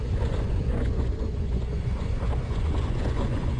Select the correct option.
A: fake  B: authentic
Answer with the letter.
A